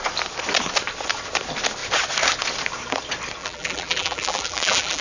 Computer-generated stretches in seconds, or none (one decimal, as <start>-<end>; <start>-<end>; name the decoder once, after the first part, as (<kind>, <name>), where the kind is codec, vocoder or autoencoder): 3.4-5.0 (vocoder, BigVGAN v2)